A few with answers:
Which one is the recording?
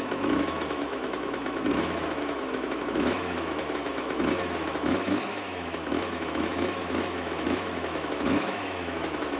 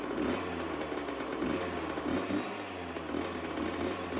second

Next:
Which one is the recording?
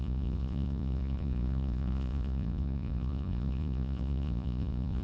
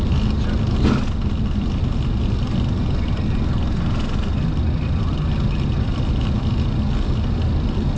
second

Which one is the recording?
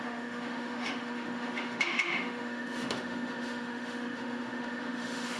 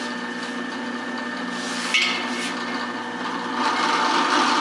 second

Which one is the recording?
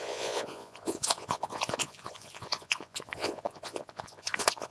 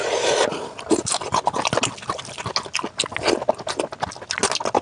second